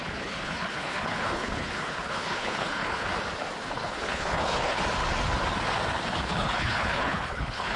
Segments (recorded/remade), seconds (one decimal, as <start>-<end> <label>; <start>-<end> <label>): 0.0-3.1 remade; 3.1-3.6 recorded; 3.6-4.8 remade; 4.8-6.1 recorded; 6.1-7.8 remade